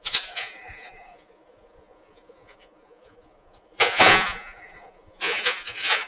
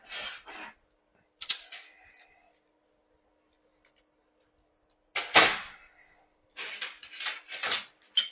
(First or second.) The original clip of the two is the second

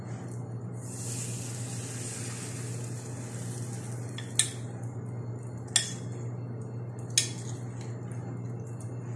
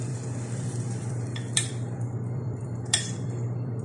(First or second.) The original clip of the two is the first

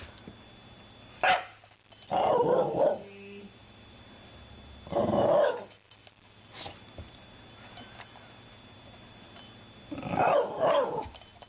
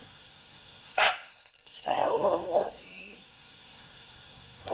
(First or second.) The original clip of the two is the first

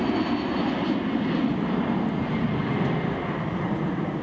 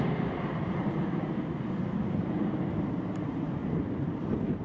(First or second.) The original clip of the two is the first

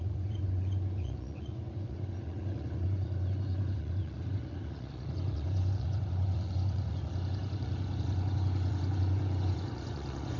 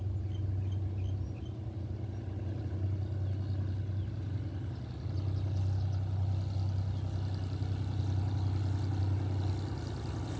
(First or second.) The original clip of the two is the second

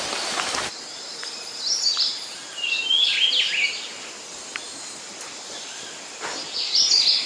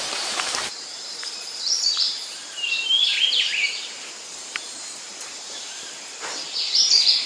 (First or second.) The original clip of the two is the first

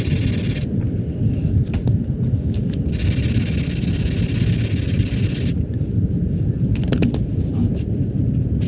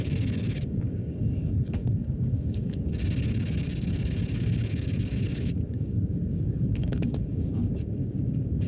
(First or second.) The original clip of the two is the first